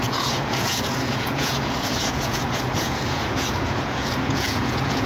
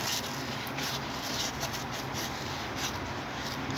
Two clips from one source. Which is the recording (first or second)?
second